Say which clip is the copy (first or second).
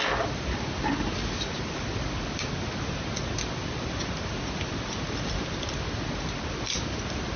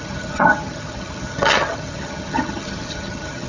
second